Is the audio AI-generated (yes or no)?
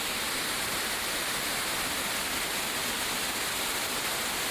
no